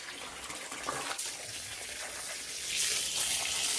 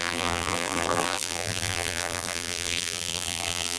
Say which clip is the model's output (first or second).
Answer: second